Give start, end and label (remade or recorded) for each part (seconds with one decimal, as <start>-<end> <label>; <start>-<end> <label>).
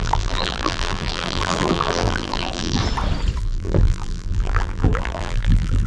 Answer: 0.0-2.8 remade; 2.8-3.4 recorded; 3.4-5.9 remade